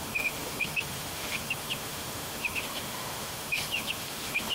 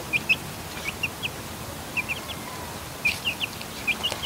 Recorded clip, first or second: second